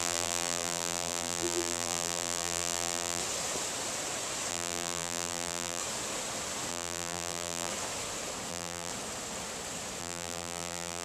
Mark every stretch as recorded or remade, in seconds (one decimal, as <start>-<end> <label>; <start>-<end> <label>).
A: 0.0-3.2 remade; 3.2-4.5 recorded; 4.5-5.8 remade; 5.8-6.7 recorded; 6.7-7.7 remade; 7.7-8.5 recorded; 8.5-8.9 remade; 8.9-10.0 recorded; 10.0-11.0 remade